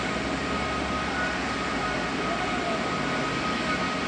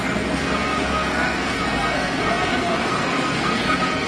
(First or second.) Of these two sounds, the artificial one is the second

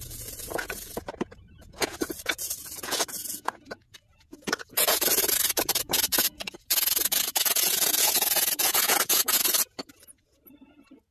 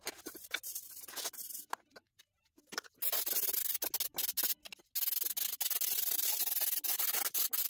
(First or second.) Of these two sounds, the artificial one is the first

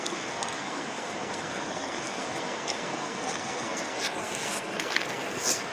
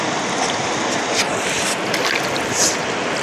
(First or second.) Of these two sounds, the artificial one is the first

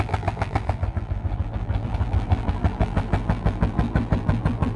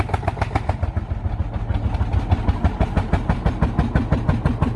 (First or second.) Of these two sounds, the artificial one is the first